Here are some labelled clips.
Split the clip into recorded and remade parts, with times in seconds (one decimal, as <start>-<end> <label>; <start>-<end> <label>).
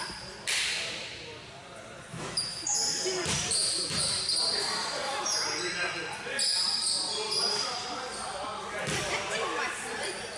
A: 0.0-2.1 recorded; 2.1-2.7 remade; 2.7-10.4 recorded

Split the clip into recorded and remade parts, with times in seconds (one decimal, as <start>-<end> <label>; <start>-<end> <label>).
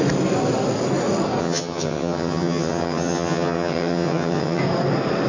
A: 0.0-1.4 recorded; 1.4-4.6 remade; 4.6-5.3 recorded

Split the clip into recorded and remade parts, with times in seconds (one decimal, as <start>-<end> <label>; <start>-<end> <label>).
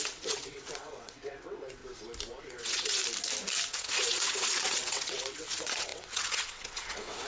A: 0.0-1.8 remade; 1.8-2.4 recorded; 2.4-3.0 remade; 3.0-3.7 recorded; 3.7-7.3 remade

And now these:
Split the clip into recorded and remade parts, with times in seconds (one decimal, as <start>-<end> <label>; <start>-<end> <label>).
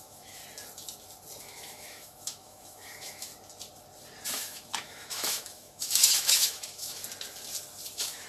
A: 0.0-0.4 remade; 0.4-1.4 recorded; 1.4-3.3 remade; 3.3-4.3 recorded; 4.3-7.0 remade; 7.0-7.9 recorded; 7.9-8.3 remade